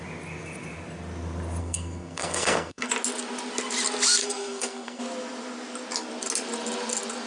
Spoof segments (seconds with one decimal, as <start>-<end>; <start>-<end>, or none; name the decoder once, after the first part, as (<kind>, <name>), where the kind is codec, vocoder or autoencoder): 1.6-2.9 (codec, SNAC); 4.2-5.0